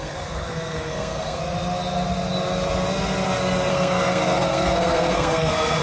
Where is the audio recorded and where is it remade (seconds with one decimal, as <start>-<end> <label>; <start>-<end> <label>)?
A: 0.0-1.4 remade; 1.4-3.7 recorded; 3.7-5.8 remade